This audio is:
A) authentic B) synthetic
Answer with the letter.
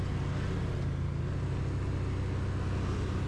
A